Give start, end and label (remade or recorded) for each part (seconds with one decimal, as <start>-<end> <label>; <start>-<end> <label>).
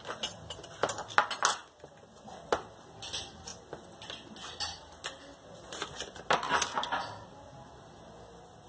0.0-8.7 recorded